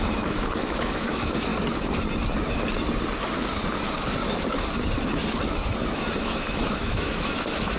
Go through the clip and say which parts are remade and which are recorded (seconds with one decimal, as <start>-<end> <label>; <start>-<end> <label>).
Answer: 0.0-1.5 remade; 1.5-6.2 recorded; 6.2-7.8 remade